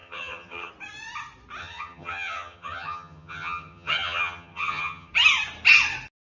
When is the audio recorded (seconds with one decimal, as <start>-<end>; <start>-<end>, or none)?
0.7-1.6; 5.1-6.2